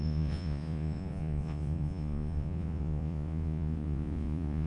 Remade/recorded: remade